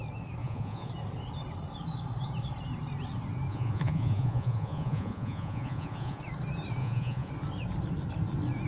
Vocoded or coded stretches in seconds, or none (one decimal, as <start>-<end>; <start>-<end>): 0.4-0.9; 3.5-6.2; 6.8-7.3